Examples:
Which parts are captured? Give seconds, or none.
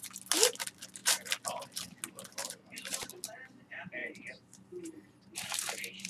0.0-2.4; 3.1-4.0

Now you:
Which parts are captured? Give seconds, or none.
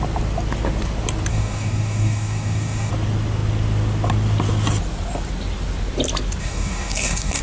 0.0-1.3; 2.9-6.4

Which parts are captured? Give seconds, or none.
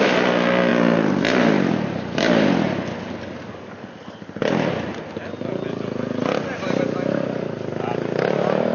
0.0-8.7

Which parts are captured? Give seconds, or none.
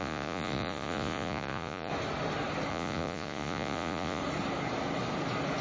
1.9-2.7; 4.2-5.6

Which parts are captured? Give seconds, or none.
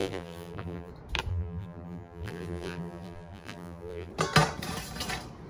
0.9-1.3; 4.1-5.5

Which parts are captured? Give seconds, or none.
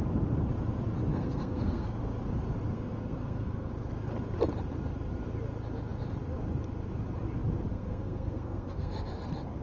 0.0-1.1; 2.0-2.7; 3.7-7.7; 8.9-9.6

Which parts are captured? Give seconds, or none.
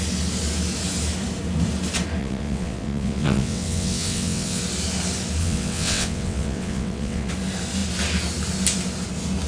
0.0-2.2; 4.6-5.4; 7.3-9.5